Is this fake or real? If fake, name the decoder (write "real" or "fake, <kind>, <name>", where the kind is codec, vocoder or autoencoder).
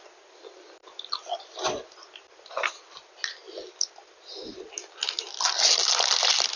real